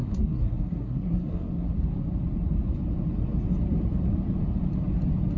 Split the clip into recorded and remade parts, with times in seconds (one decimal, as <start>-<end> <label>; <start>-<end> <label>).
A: 0.0-1.7 remade; 1.7-5.4 recorded